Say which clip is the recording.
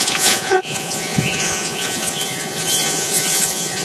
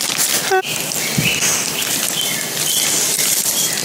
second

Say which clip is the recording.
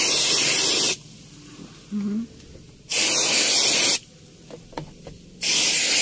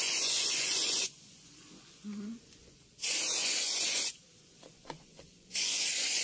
first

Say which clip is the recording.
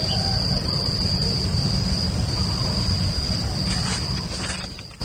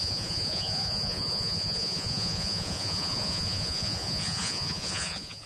first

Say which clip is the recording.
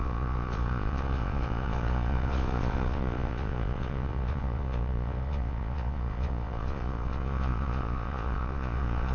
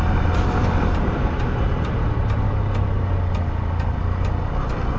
second